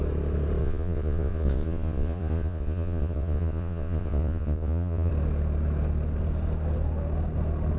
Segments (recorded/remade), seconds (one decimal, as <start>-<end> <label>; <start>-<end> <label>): 0.0-0.6 recorded; 0.6-5.1 remade; 5.1-7.8 recorded